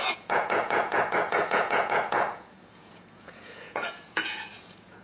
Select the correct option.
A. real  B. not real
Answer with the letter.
B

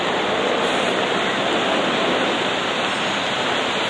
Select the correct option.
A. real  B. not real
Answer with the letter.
A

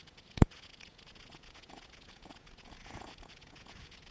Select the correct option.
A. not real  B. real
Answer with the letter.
A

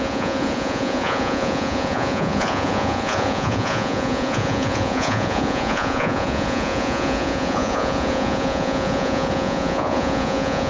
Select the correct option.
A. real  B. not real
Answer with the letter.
B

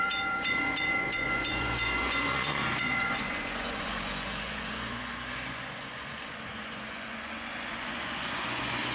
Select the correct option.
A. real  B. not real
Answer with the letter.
B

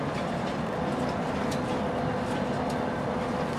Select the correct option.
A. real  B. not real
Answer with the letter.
A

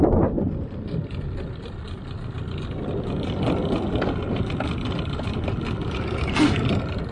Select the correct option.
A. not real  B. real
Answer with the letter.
B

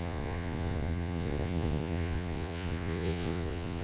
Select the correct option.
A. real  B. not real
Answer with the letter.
B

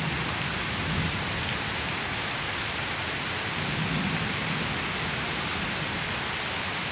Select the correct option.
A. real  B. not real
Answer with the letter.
A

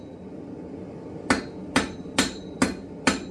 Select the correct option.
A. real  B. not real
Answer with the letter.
A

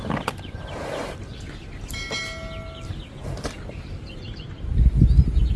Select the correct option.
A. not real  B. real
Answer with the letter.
B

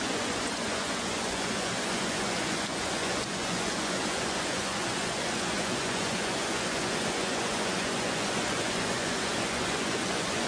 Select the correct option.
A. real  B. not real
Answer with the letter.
B